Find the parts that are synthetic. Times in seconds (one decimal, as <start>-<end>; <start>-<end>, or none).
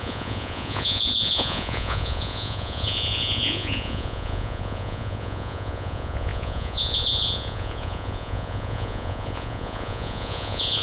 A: 0.0-10.8